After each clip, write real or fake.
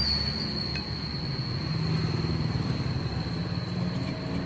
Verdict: real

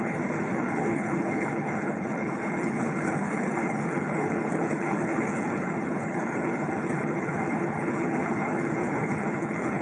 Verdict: fake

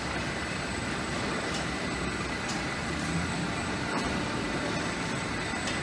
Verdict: real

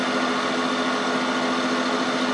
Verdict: real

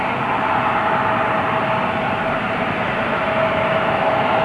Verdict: real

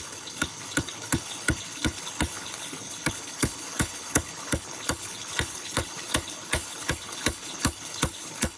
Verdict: fake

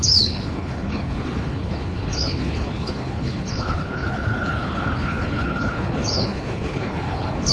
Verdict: fake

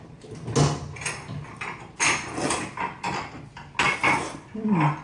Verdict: real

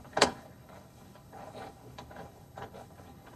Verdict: fake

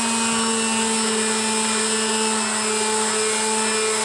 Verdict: real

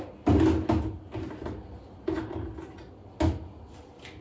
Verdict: real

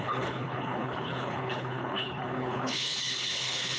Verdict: fake